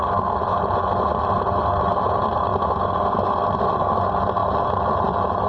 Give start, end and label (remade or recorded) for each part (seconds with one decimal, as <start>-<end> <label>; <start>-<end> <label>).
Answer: 0.0-5.5 recorded